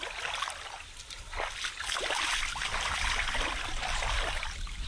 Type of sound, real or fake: real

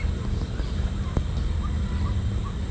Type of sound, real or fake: real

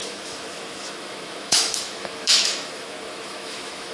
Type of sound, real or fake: fake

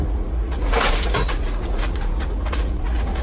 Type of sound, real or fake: fake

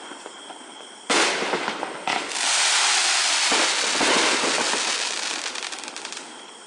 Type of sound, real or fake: real